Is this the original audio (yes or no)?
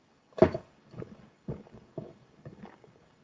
no